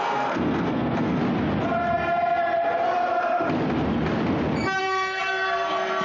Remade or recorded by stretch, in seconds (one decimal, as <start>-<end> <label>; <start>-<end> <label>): 0.0-1.2 remade; 1.2-4.8 recorded; 4.8-6.0 remade